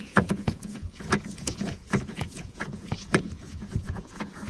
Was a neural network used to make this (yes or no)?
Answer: yes